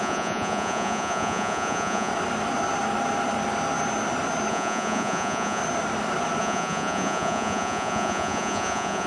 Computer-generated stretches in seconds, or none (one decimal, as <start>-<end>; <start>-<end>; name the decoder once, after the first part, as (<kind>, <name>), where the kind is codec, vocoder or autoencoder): 0.0-2.1 (vocoder, Vocos); 4.5-5.6; 6.4-9.1